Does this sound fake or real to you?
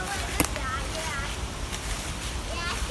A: real